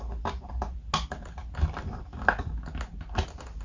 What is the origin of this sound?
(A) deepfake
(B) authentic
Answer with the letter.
B